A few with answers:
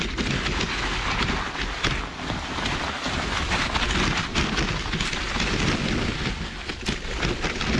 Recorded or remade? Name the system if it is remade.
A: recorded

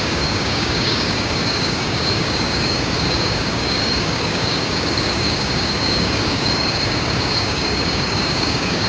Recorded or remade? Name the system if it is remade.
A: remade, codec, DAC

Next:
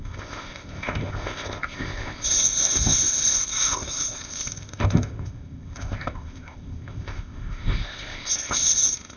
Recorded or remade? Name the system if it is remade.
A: remade, codec, ZipCodec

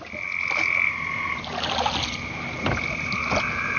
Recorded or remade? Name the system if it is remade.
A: recorded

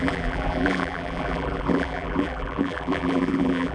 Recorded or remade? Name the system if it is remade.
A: remade, vocoder, BigVGAN v2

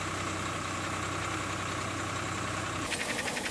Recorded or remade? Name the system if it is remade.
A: recorded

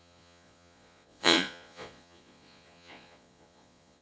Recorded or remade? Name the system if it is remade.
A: remade, vocoder, Vocos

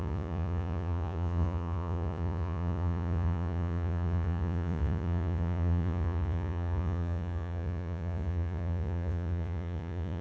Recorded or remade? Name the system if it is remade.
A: remade, vocoder, Vocos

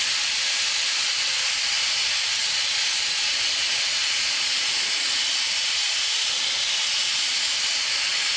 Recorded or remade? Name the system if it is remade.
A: recorded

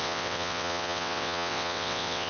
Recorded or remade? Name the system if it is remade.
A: remade, vocoder, WaveNeXt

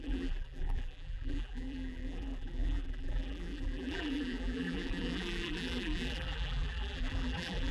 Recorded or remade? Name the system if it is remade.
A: remade, vocoder, BigVGAN v2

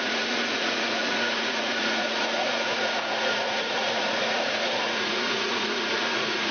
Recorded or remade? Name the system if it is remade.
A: remade, vocoder, Vocos